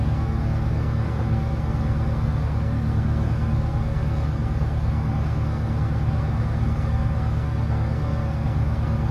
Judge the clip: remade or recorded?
remade